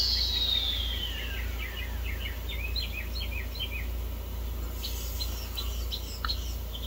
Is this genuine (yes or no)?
yes